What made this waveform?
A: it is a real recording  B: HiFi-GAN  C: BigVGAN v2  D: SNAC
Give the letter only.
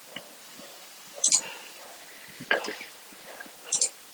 C